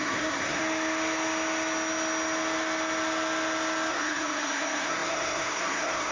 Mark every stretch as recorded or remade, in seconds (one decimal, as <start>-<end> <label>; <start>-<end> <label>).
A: 0.0-0.6 remade; 0.6-3.9 recorded; 3.9-6.1 remade